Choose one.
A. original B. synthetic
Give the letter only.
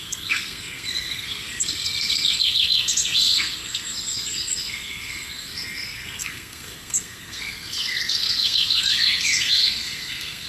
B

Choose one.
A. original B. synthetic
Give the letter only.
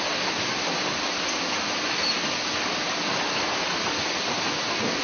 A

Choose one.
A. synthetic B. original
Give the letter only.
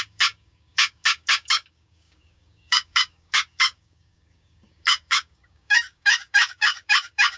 A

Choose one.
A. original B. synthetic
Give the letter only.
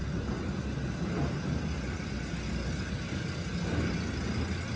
A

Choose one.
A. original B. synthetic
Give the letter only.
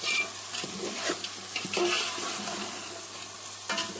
A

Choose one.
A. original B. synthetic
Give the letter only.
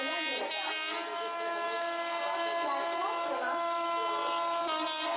A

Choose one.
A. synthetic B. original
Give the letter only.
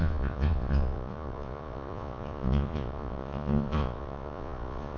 A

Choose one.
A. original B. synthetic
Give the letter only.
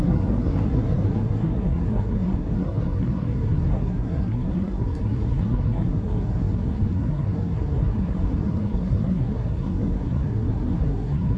B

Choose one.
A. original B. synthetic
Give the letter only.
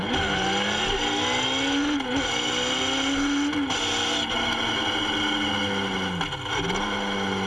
A